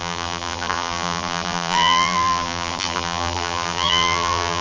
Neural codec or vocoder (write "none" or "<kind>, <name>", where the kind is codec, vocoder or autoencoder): vocoder, BigVGAN v2